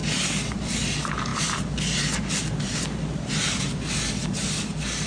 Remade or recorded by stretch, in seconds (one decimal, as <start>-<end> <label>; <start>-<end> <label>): 0.0-5.1 recorded